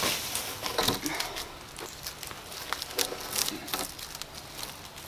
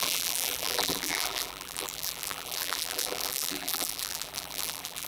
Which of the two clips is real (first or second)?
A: first